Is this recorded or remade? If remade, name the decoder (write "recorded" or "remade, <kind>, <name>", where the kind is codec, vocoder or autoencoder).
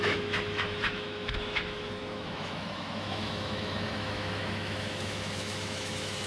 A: remade, autoencoder, DAC-VAE